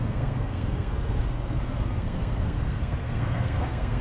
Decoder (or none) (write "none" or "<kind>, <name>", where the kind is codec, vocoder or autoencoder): codec, SNAC